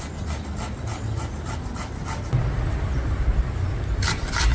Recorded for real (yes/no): yes